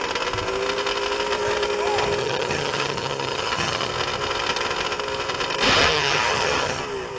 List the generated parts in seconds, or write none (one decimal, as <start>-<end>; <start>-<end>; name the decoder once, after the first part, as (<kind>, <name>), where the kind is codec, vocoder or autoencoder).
2.2-3.9 (vocoder, HiFi-GAN); 5.8-6.8